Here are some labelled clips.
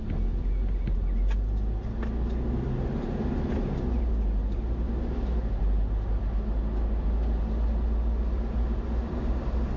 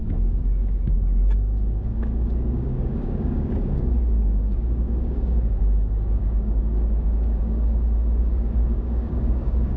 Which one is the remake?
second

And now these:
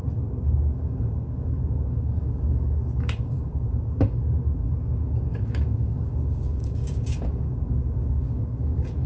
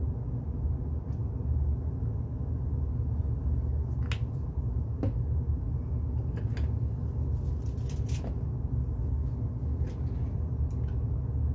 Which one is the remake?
first